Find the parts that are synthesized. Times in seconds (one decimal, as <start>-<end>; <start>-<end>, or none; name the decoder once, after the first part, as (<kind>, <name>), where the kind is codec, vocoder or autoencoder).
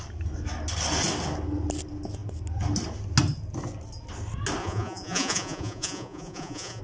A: 4.6-6.8 (vocoder, Vocos)